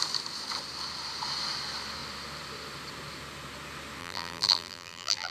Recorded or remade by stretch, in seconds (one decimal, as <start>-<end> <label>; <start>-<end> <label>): 0.0-4.0 recorded; 4.0-5.3 remade